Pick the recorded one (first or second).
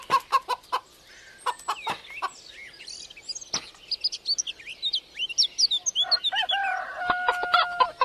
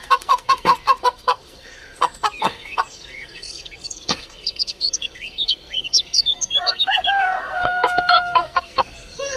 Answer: first